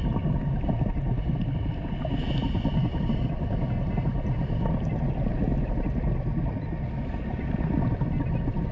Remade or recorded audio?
recorded